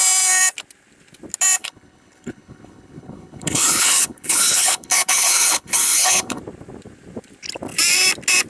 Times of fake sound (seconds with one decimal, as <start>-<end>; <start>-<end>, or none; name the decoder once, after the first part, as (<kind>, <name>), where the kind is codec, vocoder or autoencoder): 1.6-6.4 (codec, HILCodec)